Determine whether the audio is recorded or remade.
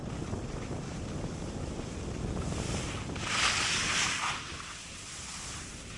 recorded